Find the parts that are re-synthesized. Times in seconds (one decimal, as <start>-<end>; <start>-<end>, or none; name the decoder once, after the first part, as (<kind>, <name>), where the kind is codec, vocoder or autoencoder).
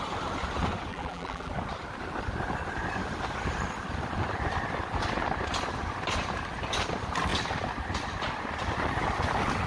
0.9-1.5 (vocoder, BigVGAN v2)